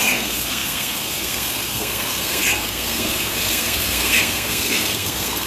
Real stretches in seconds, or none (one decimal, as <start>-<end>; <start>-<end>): none